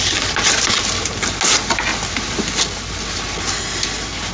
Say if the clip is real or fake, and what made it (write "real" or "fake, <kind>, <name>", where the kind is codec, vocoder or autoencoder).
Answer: real